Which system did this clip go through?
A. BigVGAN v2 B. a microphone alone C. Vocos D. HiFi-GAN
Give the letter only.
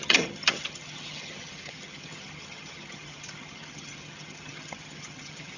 D